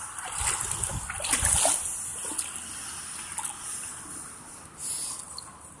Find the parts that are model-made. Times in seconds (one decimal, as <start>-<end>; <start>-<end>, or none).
none